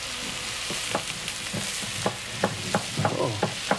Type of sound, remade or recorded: recorded